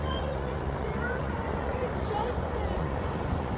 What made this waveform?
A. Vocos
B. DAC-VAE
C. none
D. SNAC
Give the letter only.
A